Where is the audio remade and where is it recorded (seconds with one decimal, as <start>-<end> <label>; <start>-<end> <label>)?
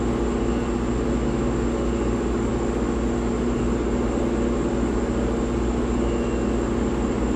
0.0-7.4 recorded